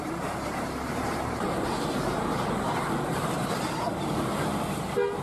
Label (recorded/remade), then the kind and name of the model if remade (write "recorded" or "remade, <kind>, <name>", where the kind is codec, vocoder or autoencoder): remade, vocoder, BigVGAN v2